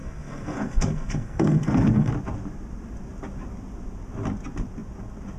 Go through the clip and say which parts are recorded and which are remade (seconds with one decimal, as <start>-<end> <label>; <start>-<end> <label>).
0.0-2.1 remade; 2.1-5.4 recorded